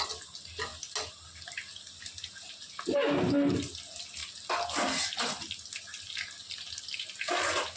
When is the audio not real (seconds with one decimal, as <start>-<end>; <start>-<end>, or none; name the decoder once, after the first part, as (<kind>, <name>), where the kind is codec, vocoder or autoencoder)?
none